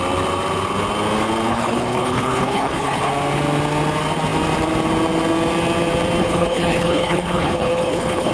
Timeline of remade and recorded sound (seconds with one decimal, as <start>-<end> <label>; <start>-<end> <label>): 0.0-1.5 recorded; 1.5-3.1 remade; 3.1-6.2 recorded; 6.2-8.3 remade